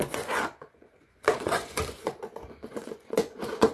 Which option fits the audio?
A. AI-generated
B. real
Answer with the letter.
A